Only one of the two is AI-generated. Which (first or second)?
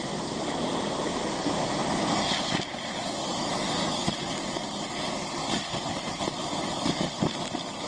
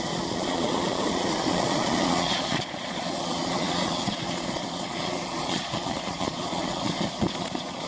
second